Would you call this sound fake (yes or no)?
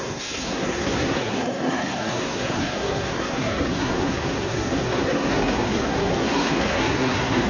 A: yes